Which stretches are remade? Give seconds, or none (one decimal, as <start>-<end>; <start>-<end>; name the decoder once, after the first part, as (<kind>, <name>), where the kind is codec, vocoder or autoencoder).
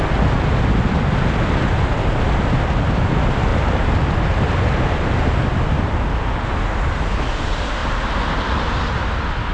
none